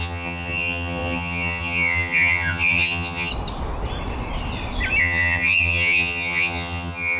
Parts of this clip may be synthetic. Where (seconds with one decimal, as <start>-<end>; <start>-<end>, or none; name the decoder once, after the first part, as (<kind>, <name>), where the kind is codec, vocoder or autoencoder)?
0.0-3.3 (vocoder, HiFi-GAN); 5.0-7.2